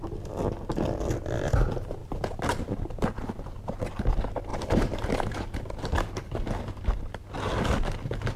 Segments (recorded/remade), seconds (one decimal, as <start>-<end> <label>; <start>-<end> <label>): 0.0-2.0 recorded; 2.0-3.9 remade; 3.9-4.5 recorded; 4.5-5.6 remade; 5.6-8.4 recorded